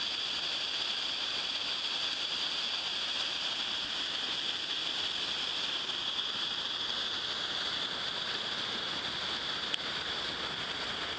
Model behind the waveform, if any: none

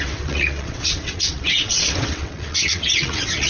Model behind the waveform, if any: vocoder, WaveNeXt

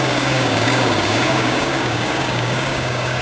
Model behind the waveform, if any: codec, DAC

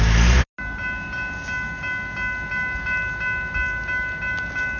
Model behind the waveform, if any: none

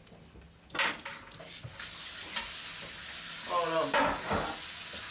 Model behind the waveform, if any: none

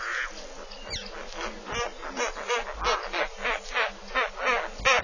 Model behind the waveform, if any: none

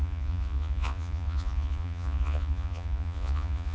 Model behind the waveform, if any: vocoder, Vocos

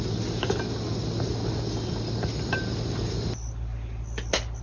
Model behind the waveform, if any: none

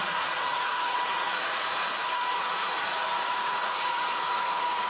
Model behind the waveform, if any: vocoder, Vocos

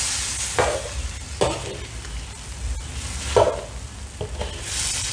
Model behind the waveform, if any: none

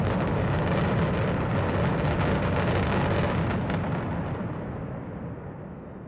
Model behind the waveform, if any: none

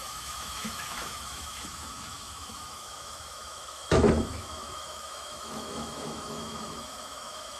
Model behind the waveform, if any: autoencoder, DAC-VAE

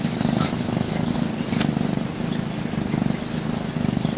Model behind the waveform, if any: none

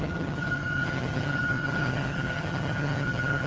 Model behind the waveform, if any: vocoder, HiFi-GAN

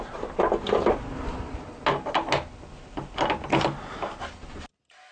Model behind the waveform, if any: none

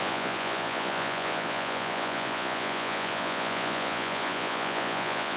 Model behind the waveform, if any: vocoder, Vocos